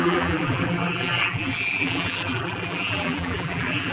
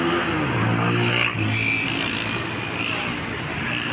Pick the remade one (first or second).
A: first